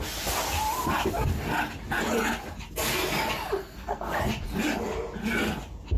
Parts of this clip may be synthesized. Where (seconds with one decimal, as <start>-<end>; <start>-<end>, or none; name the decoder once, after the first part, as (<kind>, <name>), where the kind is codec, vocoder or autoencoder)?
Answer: 3.6-4.2 (codec, SNAC)